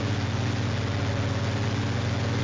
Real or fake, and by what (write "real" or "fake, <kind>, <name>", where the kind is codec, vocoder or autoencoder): real